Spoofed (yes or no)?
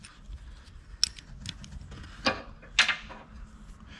no